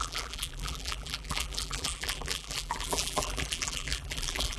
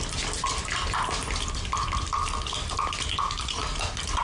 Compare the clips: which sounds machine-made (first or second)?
first